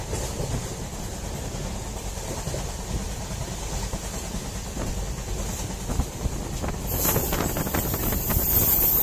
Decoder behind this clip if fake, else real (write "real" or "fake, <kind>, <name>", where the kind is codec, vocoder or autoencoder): real